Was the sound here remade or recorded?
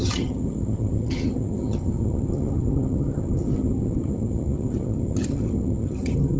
remade